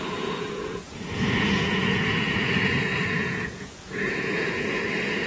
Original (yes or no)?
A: no